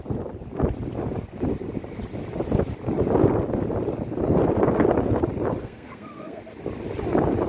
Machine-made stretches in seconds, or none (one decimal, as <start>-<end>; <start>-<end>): 5.6-6.4